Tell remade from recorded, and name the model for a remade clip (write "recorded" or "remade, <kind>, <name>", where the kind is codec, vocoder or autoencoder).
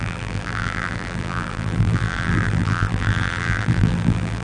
remade, vocoder, BigVGAN v2